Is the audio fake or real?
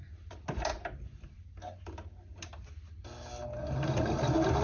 real